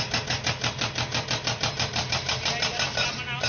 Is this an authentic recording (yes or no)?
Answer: yes